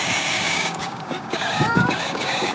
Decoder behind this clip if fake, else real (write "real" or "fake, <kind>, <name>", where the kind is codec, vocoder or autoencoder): fake, codec, DAC